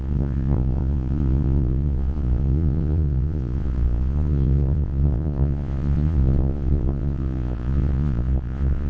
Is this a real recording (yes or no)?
no